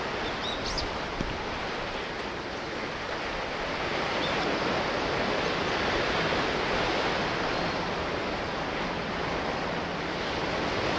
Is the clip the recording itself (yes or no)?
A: yes